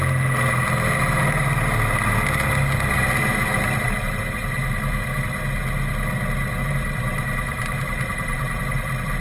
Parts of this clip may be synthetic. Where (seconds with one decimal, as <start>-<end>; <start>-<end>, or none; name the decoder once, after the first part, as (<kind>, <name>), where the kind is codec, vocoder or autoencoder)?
6.6-8.6 (vocoder, BigVGAN v2)